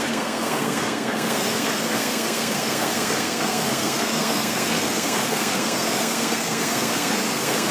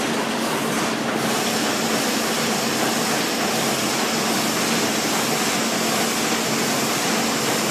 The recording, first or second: second